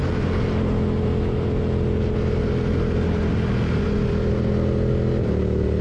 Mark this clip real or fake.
real